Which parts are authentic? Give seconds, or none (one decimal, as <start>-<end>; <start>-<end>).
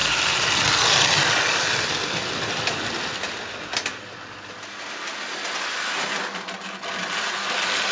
3.6-7.9